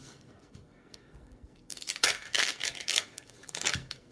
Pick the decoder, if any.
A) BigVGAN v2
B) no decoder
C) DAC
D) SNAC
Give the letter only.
D